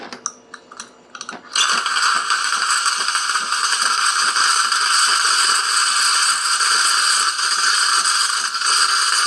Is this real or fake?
real